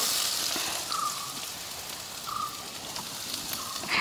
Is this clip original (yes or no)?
yes